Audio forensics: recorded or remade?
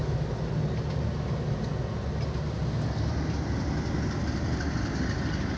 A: recorded